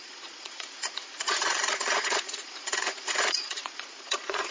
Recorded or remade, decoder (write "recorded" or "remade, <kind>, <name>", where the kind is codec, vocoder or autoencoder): remade, vocoder, Vocos